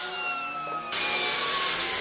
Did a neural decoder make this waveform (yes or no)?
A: no